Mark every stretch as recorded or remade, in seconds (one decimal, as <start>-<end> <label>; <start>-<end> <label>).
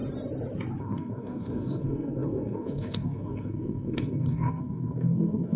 0.0-0.8 recorded; 0.8-5.6 remade